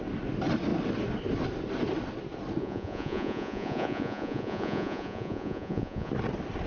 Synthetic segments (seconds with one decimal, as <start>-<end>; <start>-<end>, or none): 2.6-6.1